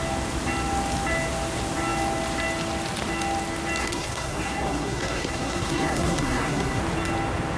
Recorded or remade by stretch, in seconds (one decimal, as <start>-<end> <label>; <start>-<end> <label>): 0.0-3.8 recorded; 3.8-6.8 remade; 6.8-7.6 recorded